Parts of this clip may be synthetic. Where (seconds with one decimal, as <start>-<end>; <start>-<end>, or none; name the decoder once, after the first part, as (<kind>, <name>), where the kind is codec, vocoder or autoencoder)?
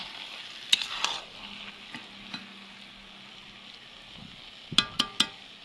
none